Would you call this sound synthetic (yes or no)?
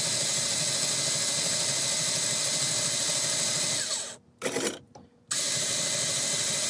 no